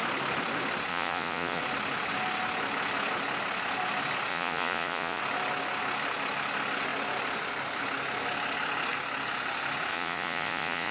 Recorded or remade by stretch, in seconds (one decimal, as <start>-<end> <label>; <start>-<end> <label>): 0.0-0.9 recorded; 0.9-1.6 remade; 1.6-4.3 recorded; 4.3-5.2 remade; 5.2-9.9 recorded; 9.9-10.9 remade